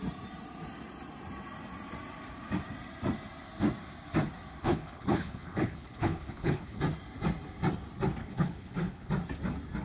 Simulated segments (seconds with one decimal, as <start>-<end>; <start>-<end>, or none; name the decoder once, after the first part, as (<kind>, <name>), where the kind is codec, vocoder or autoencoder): 4.6-6.8 (codec, HILCodec); 8.2-9.1